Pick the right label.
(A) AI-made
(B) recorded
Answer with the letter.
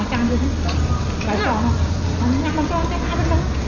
B